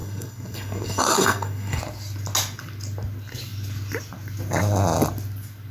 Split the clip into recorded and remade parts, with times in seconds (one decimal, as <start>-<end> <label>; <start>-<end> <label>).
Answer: 0.0-1.8 remade; 1.8-5.7 recorded